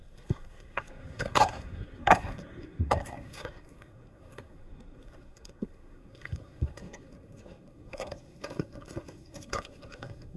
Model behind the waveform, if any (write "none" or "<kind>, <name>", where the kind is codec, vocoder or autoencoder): codec, SNAC